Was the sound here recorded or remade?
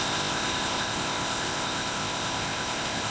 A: remade